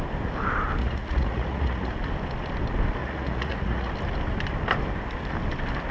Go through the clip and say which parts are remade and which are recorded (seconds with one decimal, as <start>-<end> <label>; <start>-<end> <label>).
0.0-0.8 recorded; 0.8-1.9 remade; 1.9-3.0 recorded; 3.0-3.9 remade; 3.9-5.9 recorded